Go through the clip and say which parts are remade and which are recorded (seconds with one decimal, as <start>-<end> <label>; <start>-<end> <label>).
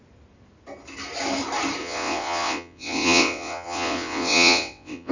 0.0-1.8 recorded; 1.8-5.1 remade